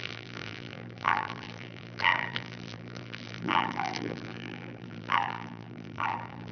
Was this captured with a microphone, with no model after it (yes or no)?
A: no